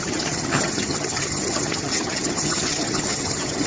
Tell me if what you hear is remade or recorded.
remade